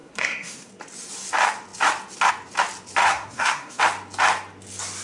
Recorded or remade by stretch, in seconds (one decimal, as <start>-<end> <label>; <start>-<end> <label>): 0.0-0.7 remade; 0.7-3.0 recorded; 3.0-3.8 remade; 3.8-5.0 recorded